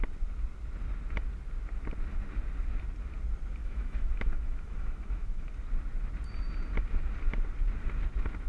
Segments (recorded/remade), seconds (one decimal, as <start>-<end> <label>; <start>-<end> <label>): 0.0-3.6 recorded; 3.6-5.5 remade; 5.5-8.5 recorded